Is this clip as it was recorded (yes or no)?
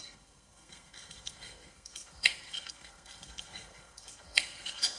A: no